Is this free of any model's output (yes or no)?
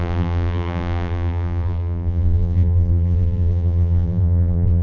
no